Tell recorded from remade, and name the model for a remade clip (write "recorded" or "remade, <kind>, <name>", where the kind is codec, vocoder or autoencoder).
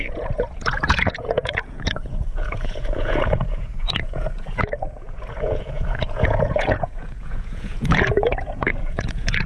remade, vocoder, Vocos